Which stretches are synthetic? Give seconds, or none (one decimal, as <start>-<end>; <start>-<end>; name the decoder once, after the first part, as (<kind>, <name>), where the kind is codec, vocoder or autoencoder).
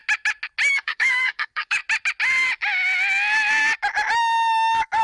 0.7-1.8 (codec, DAC)